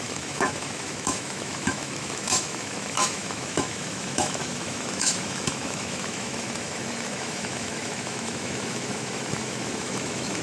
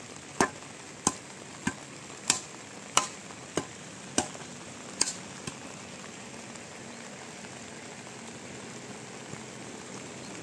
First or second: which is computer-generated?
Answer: first